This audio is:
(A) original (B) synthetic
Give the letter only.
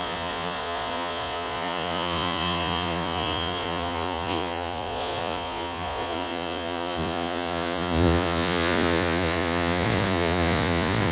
B